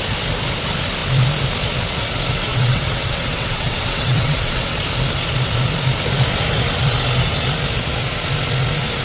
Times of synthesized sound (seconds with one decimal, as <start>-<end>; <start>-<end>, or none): 2.5-4.8